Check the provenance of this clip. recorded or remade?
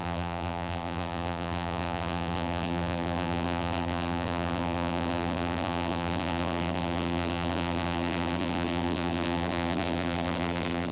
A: remade